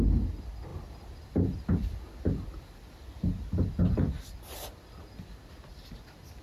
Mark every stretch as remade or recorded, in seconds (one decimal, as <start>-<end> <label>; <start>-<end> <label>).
0.0-6.4 recorded